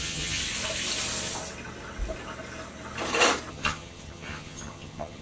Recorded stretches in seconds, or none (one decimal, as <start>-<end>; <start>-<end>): 0.4-3.5